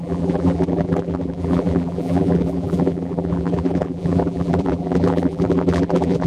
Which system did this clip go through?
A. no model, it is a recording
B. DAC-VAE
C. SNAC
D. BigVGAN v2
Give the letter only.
D